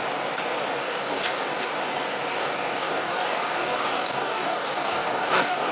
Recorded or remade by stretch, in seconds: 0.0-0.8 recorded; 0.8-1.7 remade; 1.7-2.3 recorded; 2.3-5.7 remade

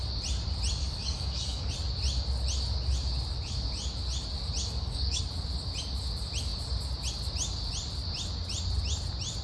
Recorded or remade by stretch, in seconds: 0.0-0.8 recorded; 0.8-1.7 remade; 1.7-4.6 recorded; 4.6-5.2 remade; 5.2-9.4 recorded

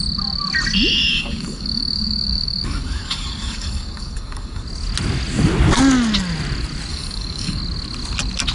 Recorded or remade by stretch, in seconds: 0.0-0.9 recorded; 0.9-4.6 remade; 4.6-6.9 recorded; 6.9-7.6 remade; 7.6-8.5 recorded

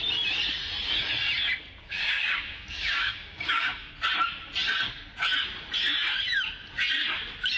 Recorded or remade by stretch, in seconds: 0.0-1.8 recorded; 1.8-3.9 remade; 3.9-7.6 recorded

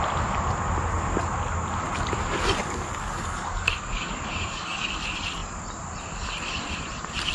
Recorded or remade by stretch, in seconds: 0.0-2.6 recorded; 2.6-4.9 remade; 4.9-7.3 recorded